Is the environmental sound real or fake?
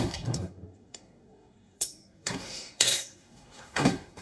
fake